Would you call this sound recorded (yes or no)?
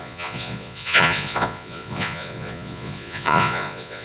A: no